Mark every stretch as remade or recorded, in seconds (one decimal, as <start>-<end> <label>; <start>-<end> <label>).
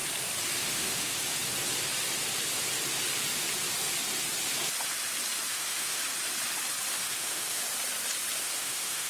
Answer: 0.0-0.6 recorded; 0.6-1.2 remade; 1.2-5.5 recorded; 5.5-6.0 remade; 6.0-6.9 recorded; 6.9-7.6 remade; 7.6-8.4 recorded; 8.4-9.1 remade